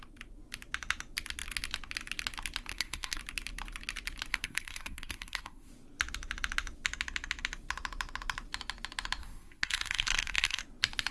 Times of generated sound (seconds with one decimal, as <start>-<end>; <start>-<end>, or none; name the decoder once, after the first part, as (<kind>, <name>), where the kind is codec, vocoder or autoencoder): 2.7-3.2 (codec, SNAC); 4.3-5.7; 9.2-10.6

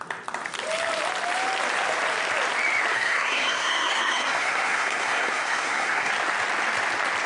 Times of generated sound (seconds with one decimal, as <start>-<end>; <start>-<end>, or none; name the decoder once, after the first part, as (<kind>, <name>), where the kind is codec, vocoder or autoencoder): 2.9-6.1 (codec, SNAC)

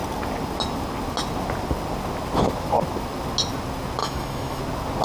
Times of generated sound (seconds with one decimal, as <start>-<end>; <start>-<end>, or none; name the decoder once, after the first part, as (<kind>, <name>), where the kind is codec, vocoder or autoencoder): 4.0-4.6 (autoencoder, DAC-VAE)

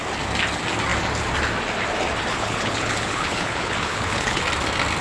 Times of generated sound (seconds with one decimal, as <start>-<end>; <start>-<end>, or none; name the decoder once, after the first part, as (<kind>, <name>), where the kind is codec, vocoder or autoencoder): 2.3-4.4 (codec, HILCodec)